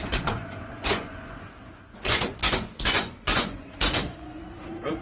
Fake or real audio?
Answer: fake